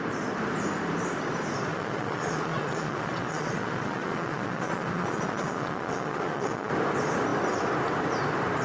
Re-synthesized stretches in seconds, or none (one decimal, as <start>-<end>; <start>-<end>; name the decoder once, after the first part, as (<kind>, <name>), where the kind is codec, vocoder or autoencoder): 1.7-6.7 (vocoder, Vocos)